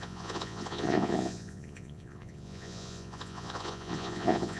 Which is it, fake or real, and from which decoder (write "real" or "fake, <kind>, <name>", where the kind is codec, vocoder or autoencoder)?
fake, vocoder, Vocos